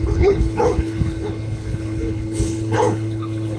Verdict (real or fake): fake